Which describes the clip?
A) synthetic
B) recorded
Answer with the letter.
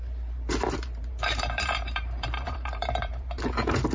A